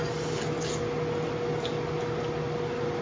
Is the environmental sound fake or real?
real